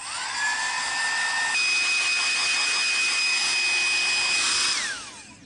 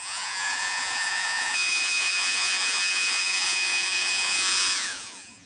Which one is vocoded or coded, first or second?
second